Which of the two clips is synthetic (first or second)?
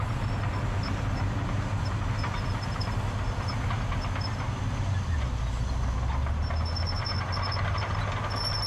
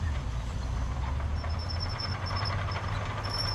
second